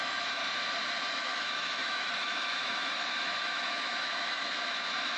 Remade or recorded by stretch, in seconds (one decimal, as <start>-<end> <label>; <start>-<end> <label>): 0.0-0.4 remade; 0.4-1.1 recorded; 1.1-5.2 remade